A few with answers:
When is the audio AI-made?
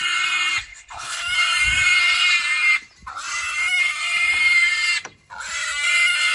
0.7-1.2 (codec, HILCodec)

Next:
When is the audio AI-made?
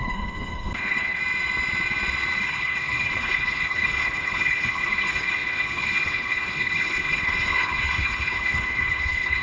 0.0-1.2 (codec, HILCodec); 2.4-9.4